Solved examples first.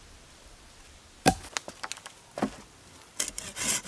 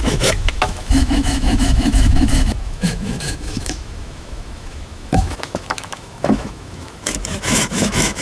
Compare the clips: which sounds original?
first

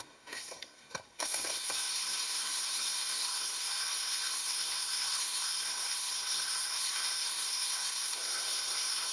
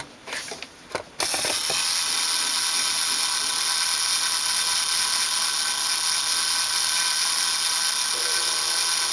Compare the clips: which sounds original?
second